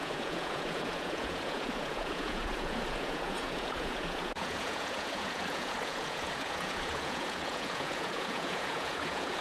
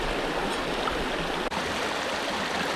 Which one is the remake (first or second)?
first